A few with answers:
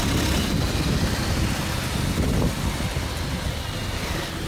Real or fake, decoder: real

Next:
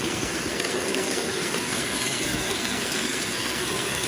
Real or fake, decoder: fake, codec, SNAC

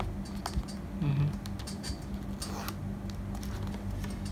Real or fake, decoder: real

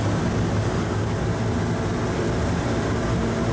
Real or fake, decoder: real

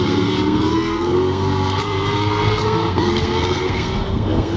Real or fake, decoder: fake, codec, SNAC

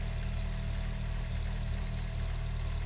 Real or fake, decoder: real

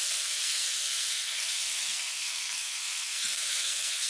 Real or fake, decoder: fake, codec, SNAC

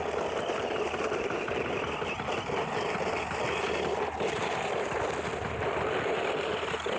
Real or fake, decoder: real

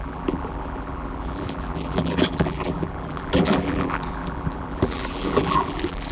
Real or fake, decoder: fake, vocoder, BigVGAN v2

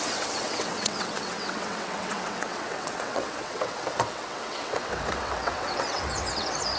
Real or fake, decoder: fake, vocoder, WaveNeXt